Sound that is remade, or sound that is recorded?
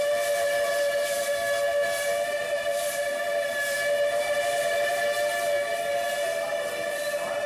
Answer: recorded